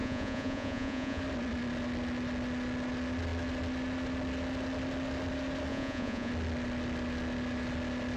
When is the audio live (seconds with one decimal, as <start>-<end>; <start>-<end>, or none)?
1.2-5.7; 6.3-8.2